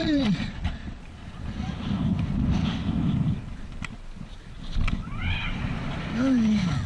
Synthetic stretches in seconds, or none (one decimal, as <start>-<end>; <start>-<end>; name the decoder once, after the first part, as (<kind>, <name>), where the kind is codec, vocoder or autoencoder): 0.0-1.0 (vocoder, Vocos)